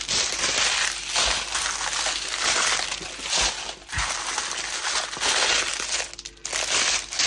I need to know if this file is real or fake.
real